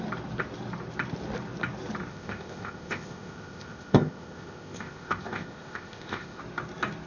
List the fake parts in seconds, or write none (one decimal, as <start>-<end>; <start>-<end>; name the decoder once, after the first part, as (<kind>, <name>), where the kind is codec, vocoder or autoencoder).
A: 2.1-6.4 (codec, ZipCodec)